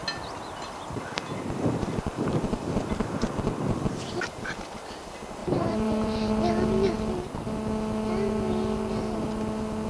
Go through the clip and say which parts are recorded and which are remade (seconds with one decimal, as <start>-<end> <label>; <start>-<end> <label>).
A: 0.0-5.4 recorded; 5.4-6.4 remade; 6.4-9.9 recorded